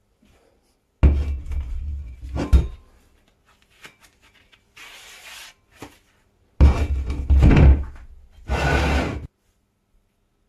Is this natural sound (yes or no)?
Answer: yes